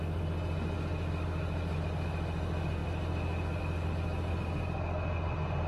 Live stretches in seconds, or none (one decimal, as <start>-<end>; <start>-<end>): 0.0-5.7